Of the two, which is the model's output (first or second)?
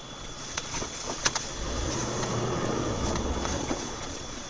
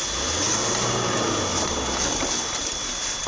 first